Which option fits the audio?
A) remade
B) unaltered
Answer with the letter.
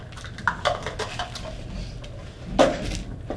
B